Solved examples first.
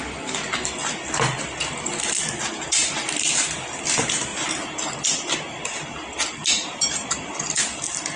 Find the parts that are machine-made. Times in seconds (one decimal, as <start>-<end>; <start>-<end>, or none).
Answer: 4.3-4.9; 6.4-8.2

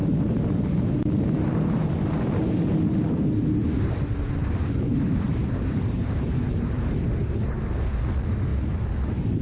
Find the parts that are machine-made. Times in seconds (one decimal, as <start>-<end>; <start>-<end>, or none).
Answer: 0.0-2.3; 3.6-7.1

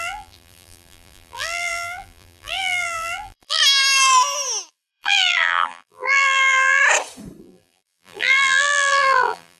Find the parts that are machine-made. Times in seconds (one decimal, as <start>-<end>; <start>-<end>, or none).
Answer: 0.0-3.6; 4.7-6.8; 7.4-9.6

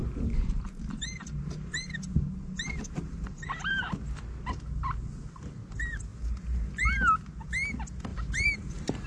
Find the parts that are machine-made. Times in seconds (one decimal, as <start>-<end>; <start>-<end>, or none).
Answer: 0.0-3.8; 6.1-6.7; 8.1-9.1

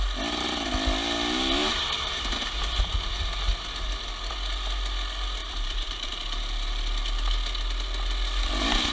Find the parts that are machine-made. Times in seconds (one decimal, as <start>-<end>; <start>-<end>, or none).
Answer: 1.6-2.8; 3.5-4.3; 5.4-6.1

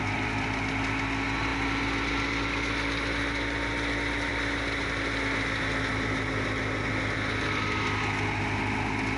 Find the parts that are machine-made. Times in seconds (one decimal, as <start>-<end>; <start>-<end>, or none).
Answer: none

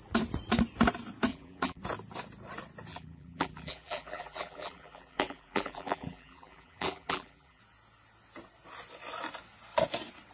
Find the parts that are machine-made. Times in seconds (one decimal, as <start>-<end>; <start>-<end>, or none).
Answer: 1.3-1.8; 2.9-7.6

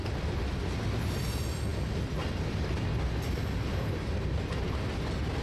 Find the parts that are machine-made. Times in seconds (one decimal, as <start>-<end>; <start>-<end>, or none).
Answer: none